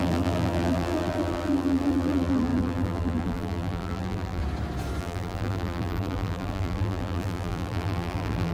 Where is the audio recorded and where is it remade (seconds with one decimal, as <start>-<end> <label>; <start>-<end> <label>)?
0.0-4.4 remade; 4.4-5.0 recorded; 5.0-8.5 remade